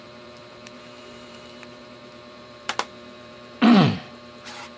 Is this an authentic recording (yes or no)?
no